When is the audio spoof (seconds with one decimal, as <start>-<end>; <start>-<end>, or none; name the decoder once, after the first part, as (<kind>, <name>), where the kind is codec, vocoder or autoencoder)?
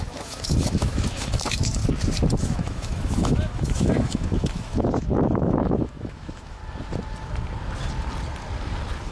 0.0-1.8 (autoencoder, DAC-VAE); 2.4-6.6